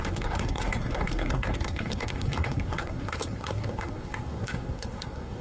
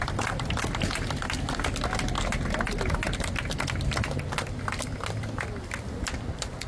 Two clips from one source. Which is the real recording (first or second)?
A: second